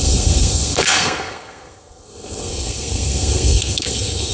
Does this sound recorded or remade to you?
remade